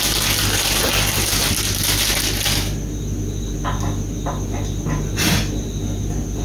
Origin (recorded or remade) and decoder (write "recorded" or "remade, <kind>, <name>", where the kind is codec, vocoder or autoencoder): recorded